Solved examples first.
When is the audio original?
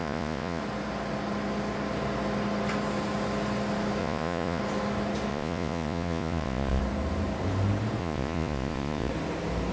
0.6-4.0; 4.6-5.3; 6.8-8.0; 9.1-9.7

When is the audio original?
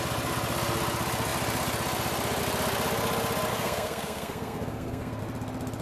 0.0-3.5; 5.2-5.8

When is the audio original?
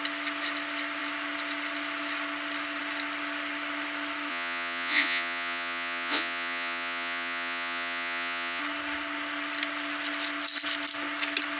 0.0-4.3; 8.6-11.6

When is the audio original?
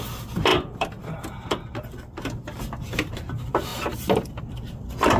0.0-5.2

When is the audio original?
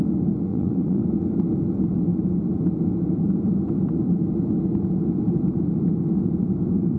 0.0-0.5; 1.0-7.0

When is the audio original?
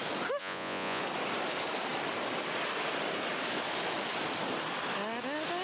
0.0-0.4; 1.0-5.6